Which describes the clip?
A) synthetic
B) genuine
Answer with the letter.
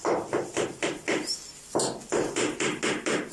B